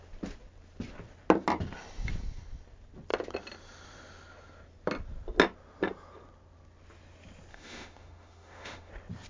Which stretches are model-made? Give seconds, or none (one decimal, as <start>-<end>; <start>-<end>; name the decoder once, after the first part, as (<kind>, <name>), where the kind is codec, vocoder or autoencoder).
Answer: 7.5-8.9 (autoencoder, DAC-VAE)